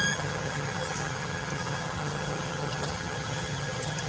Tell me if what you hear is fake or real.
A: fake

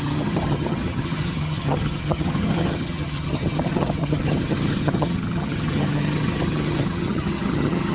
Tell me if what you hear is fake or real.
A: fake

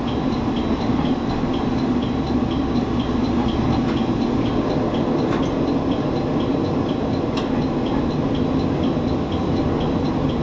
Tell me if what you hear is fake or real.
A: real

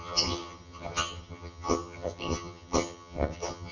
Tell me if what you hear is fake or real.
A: fake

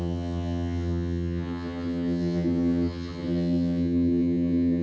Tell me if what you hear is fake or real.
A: fake